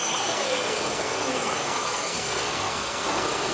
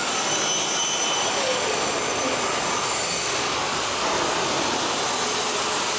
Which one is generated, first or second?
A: first